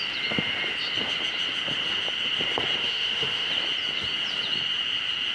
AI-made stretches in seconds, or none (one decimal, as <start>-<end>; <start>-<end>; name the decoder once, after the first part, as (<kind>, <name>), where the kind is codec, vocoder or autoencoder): 2.8-3.5 (autoencoder, DAC-VAE)